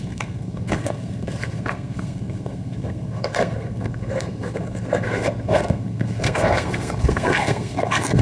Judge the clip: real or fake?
fake